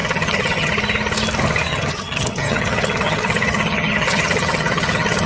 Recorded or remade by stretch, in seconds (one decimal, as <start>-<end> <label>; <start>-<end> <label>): 0.0-0.7 remade; 0.7-1.7 recorded; 1.7-5.3 remade